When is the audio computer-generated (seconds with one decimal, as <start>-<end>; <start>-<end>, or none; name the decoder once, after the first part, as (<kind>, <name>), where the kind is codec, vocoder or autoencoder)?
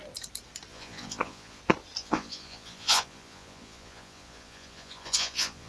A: 0.7-1.6 (vocoder, Vocos); 2.0-5.7